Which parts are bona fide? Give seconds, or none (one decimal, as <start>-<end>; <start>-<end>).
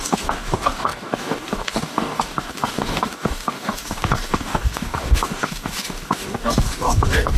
none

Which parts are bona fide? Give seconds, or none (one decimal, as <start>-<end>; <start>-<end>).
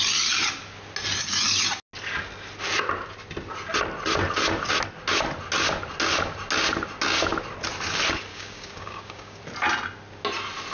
0.0-8.3; 9.4-10.7